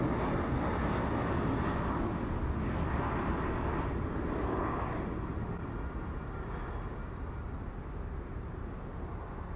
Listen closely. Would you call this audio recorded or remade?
recorded